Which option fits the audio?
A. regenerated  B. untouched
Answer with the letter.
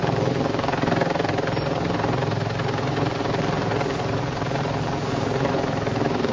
B